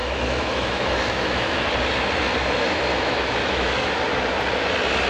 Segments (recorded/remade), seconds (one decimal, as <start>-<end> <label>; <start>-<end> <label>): 0.0-1.7 remade; 1.7-2.9 recorded; 2.9-3.9 remade; 3.9-5.1 recorded